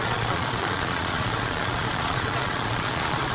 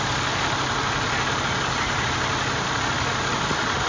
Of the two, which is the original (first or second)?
second